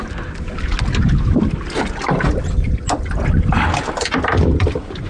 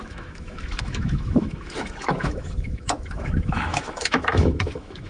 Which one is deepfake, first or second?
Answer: second